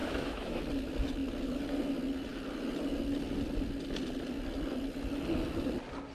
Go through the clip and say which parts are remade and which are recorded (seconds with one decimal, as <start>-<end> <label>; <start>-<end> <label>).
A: 0.0-0.6 remade; 0.6-6.1 recorded